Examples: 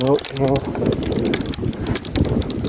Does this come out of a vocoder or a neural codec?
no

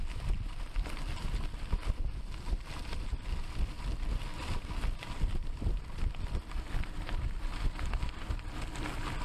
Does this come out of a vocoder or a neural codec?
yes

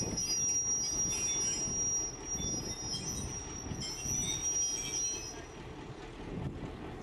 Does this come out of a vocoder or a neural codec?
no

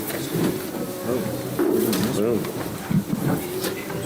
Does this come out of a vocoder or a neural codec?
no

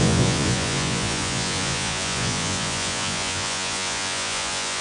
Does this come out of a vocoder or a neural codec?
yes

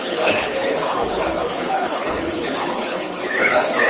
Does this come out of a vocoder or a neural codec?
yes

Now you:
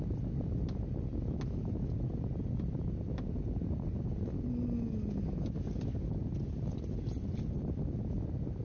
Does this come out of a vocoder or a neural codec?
no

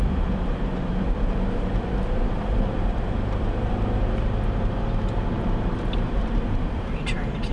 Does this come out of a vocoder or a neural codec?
yes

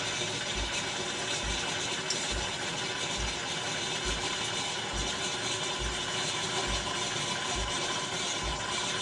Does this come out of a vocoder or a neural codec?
no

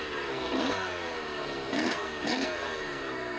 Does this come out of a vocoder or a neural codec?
yes